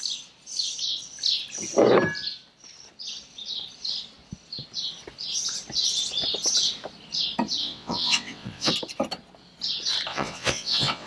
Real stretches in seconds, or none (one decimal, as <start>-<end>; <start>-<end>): 0.0-7.6; 8.7-10.1